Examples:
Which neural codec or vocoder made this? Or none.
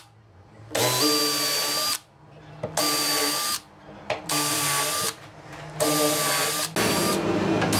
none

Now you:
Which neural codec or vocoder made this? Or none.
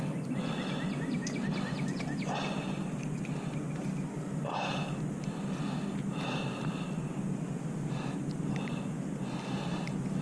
none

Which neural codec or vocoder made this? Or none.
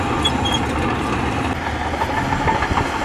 none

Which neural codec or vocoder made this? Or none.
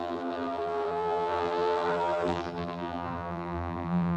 vocoder, BigVGAN v2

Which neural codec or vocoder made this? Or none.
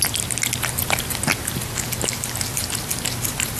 none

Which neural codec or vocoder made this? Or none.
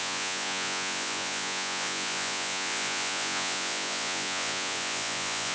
vocoder, Vocos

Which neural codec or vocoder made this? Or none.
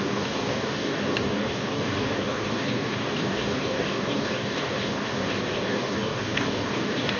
codec, DAC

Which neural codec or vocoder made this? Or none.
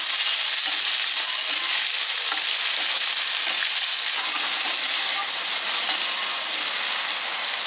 none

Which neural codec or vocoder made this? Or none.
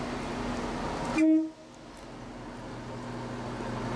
none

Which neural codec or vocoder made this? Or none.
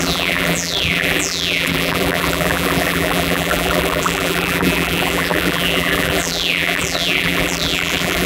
vocoder, BigVGAN v2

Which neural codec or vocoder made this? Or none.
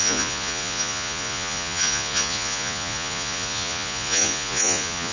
vocoder, Vocos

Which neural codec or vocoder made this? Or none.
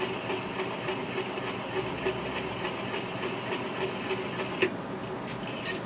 none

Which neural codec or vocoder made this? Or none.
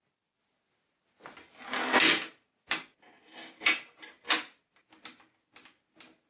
none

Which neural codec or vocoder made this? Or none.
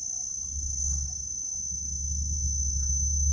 none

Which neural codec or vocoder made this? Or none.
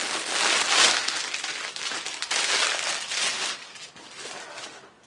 none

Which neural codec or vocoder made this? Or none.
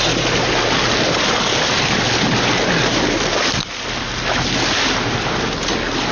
none